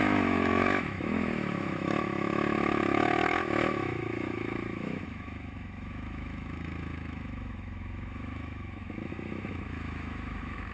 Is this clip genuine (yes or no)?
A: no